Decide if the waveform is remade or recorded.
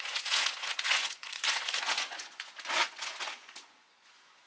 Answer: remade